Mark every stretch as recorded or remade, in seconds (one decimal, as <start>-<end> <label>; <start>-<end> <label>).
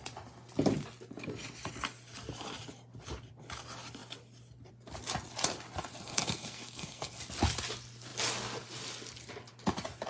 0.0-5.9 recorded; 5.9-7.2 remade; 7.2-10.1 recorded